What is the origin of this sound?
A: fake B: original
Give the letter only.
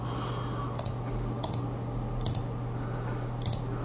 B